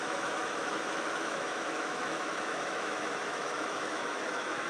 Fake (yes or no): yes